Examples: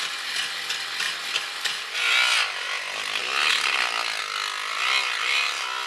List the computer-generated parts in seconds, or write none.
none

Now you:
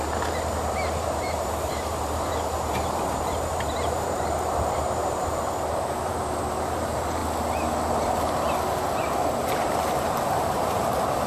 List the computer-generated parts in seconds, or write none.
0.0-7.2 (vocoder, BigVGAN v2); 9.5-11.3

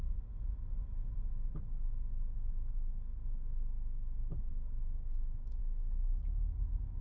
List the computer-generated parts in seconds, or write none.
4.5-5.6 (codec, DAC)

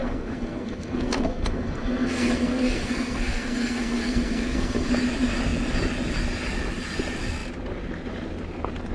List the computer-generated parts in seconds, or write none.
0.0-4.9 (codec, SNAC)

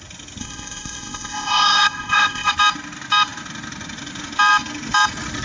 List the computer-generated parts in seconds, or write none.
0.4-2.5 (codec, ZipCodec)

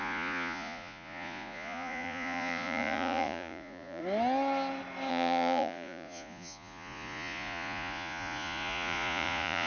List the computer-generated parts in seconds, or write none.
0.0-4.0 (vocoder, Vocos); 5.1-9.7

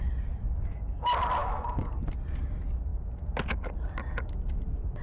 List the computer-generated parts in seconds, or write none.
0.4-0.9 (autoencoder, DAC-VAE); 1.4-1.9